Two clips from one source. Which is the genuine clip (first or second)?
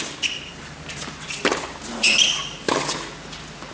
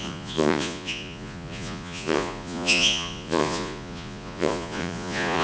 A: first